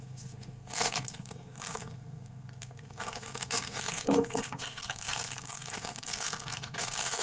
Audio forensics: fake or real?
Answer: fake